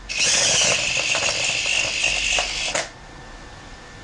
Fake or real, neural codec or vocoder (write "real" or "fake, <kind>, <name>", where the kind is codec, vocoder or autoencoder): real